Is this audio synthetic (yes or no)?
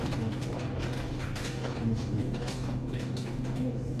yes